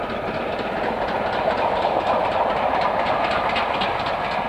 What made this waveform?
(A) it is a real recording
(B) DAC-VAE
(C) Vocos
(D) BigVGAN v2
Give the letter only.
A